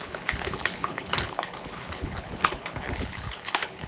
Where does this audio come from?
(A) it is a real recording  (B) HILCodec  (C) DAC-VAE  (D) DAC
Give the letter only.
B